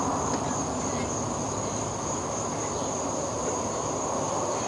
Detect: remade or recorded recorded